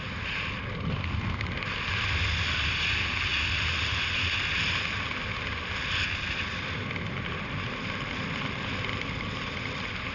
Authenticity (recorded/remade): recorded